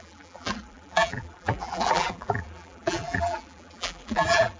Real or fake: fake